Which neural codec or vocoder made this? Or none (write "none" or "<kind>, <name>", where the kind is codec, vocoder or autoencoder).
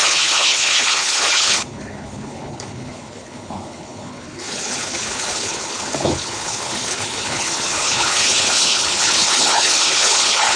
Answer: codec, HILCodec